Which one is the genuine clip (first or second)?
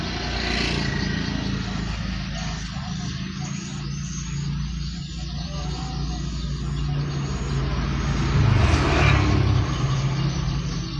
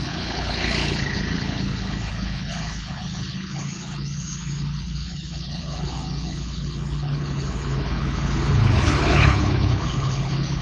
first